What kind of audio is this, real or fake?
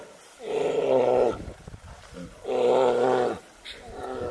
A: real